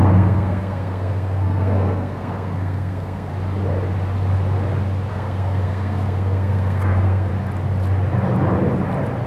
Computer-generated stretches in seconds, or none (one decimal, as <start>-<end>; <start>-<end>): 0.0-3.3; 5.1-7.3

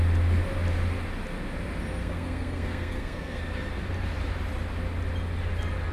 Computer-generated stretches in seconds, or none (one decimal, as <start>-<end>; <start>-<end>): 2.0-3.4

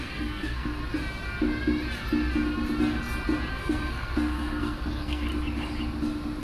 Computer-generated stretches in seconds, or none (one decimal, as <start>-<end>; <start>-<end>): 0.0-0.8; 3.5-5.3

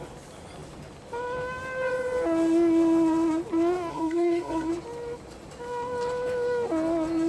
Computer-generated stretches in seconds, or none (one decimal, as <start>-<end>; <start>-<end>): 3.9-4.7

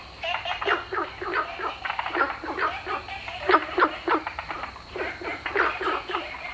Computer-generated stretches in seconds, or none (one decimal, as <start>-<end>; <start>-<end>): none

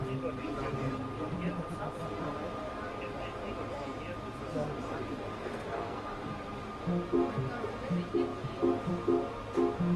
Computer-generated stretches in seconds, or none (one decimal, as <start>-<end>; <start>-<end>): 5.3-6.0